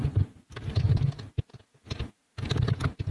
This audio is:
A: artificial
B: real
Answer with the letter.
B